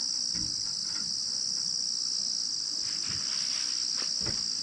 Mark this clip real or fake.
real